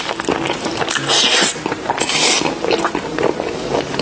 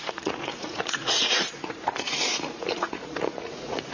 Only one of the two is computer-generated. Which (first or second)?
second